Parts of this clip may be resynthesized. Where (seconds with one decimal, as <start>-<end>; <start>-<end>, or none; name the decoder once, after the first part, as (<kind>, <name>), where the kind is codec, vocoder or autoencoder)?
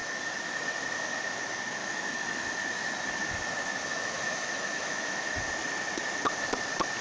0.0-0.6 (autoencoder, DAC-VAE); 1.8-2.6; 3.9-5.4